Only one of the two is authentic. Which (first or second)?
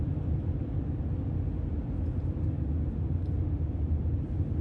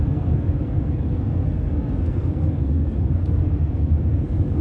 first